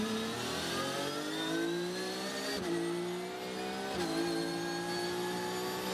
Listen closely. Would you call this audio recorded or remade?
recorded